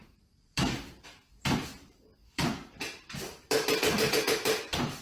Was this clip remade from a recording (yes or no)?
yes